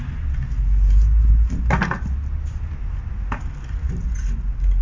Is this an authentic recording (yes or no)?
yes